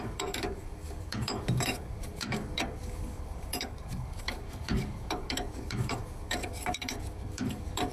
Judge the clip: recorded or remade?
remade